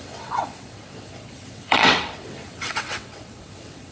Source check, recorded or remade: remade